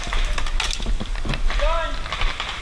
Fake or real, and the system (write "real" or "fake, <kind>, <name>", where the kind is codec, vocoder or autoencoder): real